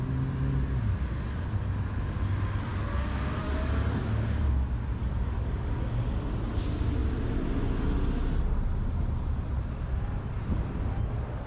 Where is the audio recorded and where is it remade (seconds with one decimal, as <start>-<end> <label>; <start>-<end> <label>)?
0.0-2.7 recorded; 2.7-4.0 remade; 4.0-5.0 recorded; 5.0-6.2 remade; 6.2-11.5 recorded